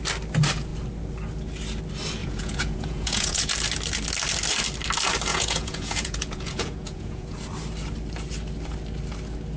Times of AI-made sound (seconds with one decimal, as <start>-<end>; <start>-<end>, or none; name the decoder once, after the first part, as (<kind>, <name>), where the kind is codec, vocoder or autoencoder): 2.2-3.5 (vocoder, Vocos); 5.3-7.4